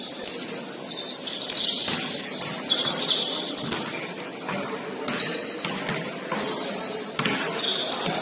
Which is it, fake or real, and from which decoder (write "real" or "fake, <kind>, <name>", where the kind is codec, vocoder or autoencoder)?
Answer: real